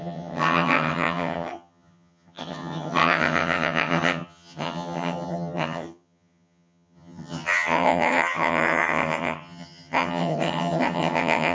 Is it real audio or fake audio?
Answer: fake